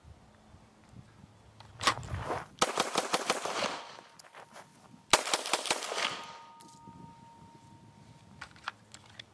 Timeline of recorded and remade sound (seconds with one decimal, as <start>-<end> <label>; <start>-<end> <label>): 0.0-9.3 recorded